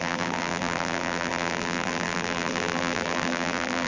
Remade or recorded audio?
remade